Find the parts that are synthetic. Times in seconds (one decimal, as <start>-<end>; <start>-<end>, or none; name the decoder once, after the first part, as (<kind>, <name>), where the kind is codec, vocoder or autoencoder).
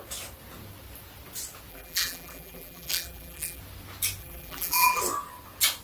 1.7-3.6 (vocoder, BigVGAN v2); 4.2-5.0